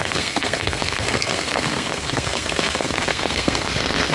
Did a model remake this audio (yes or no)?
yes